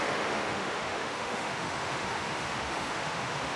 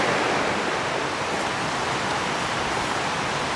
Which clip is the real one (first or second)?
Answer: second